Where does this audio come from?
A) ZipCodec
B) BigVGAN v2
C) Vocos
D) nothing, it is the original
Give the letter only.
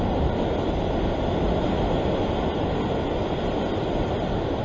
D